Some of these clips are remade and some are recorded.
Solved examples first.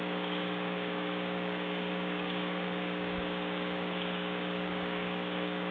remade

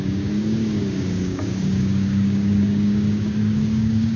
remade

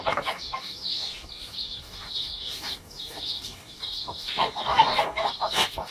remade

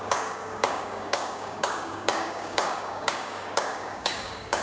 remade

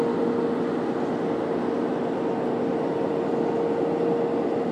recorded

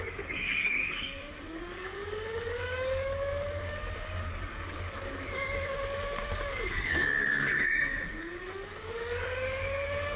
remade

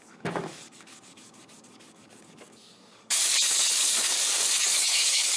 remade